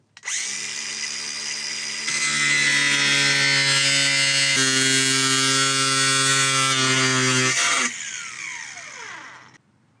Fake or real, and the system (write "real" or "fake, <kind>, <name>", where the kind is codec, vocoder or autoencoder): real